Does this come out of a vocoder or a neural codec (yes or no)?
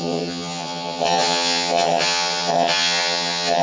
yes